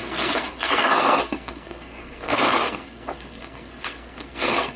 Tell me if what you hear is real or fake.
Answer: fake